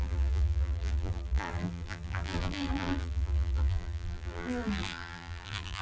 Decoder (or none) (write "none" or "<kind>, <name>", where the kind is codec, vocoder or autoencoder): vocoder, BigVGAN v2